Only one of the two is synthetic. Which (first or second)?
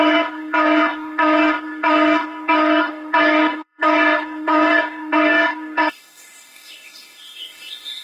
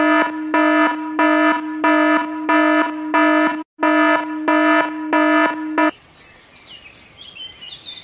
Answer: first